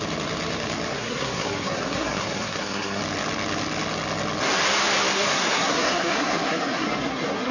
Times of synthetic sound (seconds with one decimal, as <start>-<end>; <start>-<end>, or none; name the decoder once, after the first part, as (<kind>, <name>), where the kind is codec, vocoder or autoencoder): 0.9-3.0 (codec, SNAC); 5.1-7.5